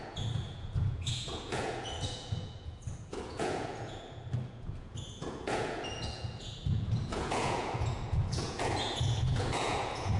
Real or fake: fake